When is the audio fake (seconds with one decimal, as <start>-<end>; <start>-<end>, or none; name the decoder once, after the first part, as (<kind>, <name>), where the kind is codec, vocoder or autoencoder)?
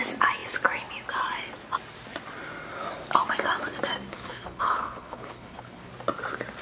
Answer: 4.1-5.9 (codec, HILCodec)